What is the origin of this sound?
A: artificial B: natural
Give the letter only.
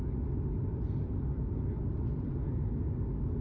B